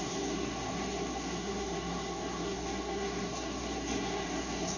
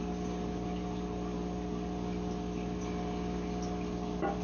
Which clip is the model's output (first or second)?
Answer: first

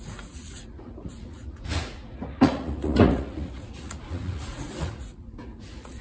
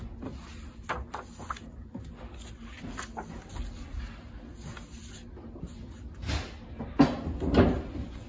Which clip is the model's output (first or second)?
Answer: first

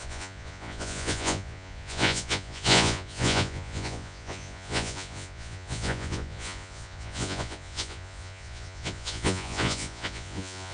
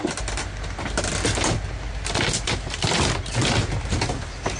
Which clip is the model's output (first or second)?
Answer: first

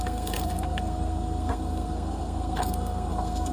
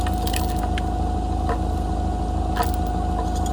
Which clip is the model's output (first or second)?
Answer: first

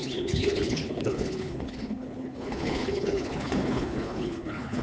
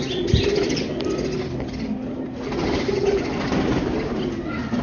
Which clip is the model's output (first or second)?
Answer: first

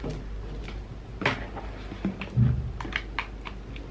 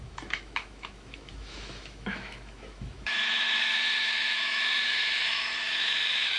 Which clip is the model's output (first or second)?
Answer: second